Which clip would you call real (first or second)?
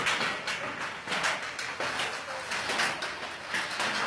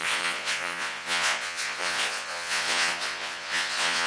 first